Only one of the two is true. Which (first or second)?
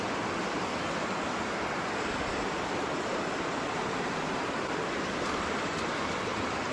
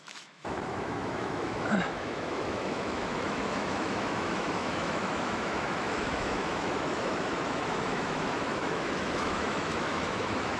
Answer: first